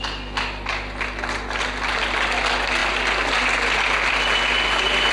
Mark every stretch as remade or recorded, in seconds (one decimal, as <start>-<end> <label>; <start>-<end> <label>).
0.0-5.1 recorded